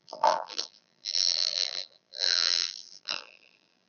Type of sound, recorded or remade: remade